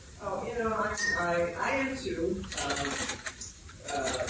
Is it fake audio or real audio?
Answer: fake